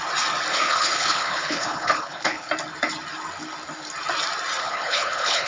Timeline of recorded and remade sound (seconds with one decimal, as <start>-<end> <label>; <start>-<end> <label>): 0.0-0.5 recorded; 0.5-2.5 remade; 2.5-4.6 recorded; 4.6-5.5 remade